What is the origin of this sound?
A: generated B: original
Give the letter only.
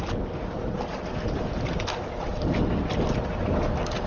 B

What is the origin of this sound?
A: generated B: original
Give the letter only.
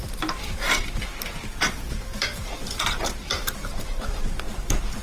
A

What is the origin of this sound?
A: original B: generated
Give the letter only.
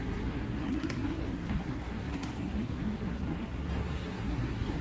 B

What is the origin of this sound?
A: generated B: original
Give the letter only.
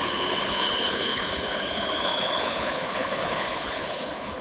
A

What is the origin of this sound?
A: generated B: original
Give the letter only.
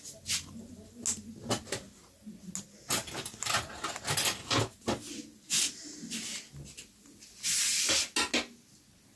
B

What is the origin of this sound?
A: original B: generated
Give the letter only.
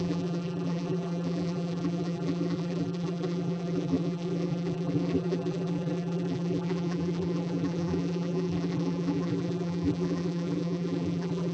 B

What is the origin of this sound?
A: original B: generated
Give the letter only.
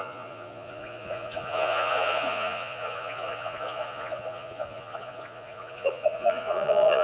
B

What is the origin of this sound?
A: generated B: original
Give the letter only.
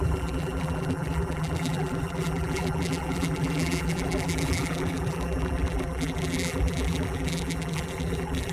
A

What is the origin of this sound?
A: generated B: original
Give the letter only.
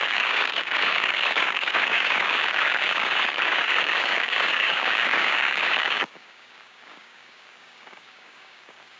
A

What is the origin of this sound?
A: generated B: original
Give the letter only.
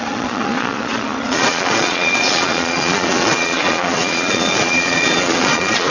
A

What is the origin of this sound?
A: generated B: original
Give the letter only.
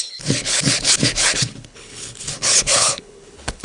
A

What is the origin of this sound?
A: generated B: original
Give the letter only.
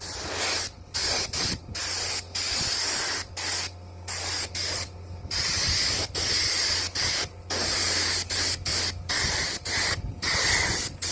B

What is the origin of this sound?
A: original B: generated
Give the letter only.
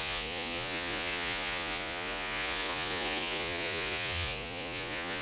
B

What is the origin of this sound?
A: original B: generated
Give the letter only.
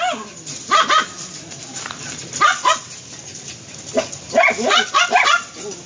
A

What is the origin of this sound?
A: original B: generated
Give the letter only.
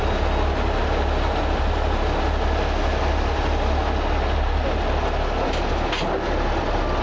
A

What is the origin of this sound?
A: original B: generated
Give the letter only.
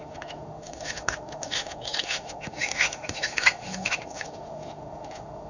B